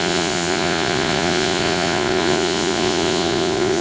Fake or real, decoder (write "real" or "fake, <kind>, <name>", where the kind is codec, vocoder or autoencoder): fake, vocoder, Vocos